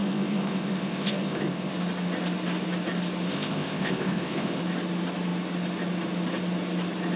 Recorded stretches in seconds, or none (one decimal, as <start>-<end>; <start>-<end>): 1.7-3.3; 4.6-7.2